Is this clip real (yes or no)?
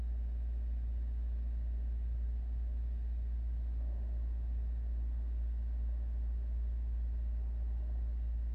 yes